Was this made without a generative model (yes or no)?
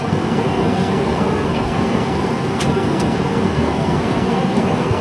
no